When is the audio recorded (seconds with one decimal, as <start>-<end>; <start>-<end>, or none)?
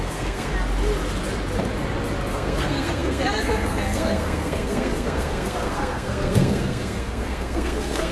0.5-2.3